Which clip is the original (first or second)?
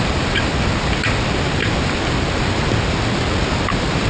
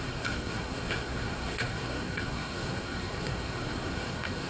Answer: first